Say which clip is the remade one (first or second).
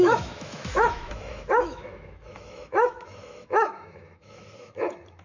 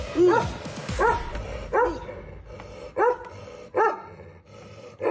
first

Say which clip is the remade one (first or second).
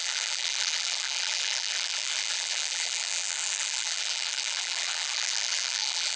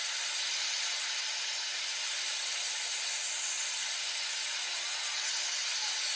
first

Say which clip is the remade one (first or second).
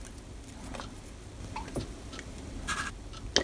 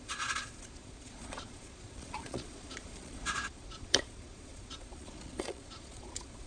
second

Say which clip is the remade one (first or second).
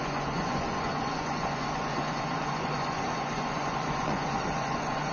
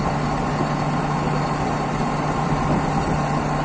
first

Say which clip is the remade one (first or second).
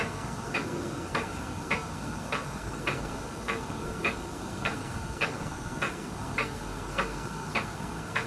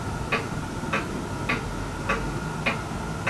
first